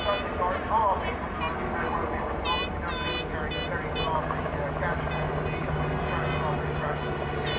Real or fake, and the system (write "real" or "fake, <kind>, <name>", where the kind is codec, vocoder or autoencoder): real